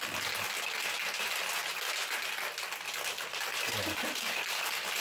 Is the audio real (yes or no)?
yes